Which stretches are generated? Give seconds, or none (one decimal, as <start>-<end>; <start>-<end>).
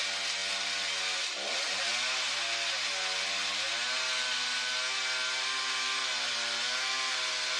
none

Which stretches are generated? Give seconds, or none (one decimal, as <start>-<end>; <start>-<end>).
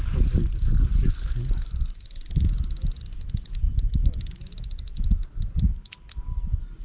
none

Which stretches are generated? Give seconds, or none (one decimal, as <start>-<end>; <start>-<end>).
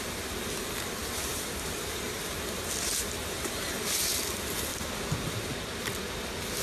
1.0-2.3; 2.9-4.2; 4.7-5.5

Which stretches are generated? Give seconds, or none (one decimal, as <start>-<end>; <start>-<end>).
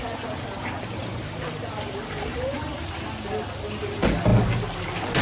1.0-2.7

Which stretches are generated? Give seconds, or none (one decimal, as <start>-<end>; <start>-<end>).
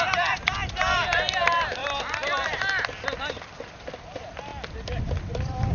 4.5-5.7